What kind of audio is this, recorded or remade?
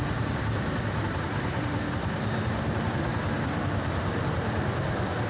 recorded